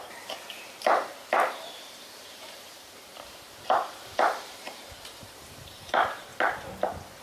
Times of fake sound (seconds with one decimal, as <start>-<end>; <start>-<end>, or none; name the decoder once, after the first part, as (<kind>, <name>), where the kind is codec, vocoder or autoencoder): 0.0-6.3 (vocoder, BigVGAN v2)